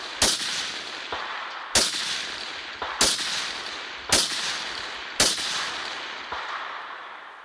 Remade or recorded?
recorded